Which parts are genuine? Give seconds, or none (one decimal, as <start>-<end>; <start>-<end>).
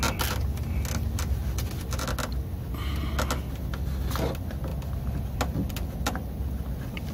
0.0-7.1